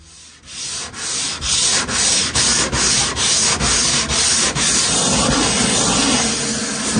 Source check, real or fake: real